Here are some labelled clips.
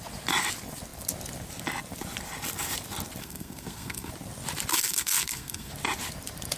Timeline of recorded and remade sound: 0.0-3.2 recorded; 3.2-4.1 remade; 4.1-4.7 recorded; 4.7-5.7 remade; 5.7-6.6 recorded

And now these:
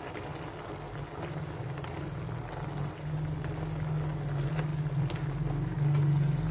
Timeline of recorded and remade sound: 0.0-6.5 recorded

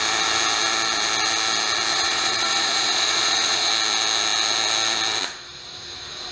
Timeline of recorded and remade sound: 0.0-1.9 recorded; 1.9-3.7 remade; 3.7-6.3 recorded

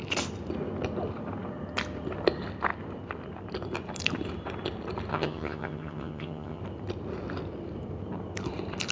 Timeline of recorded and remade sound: 0.0-5.1 recorded; 5.1-6.6 remade; 6.6-8.9 recorded

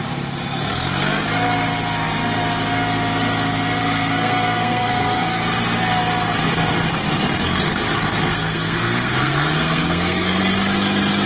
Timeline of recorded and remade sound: 0.0-3.8 recorded; 3.8-5.4 remade; 5.4-8.3 recorded; 8.3-10.4 remade; 10.4-11.3 recorded

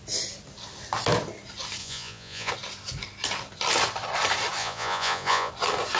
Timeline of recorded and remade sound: 0.0-1.8 recorded; 1.8-2.5 remade; 2.5-4.6 recorded; 4.6-5.5 remade; 5.5-6.0 recorded